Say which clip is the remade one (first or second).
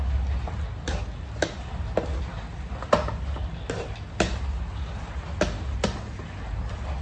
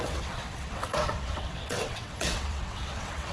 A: second